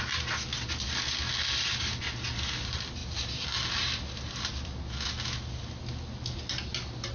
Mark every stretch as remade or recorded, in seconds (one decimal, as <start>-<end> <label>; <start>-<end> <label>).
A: 0.0-7.1 recorded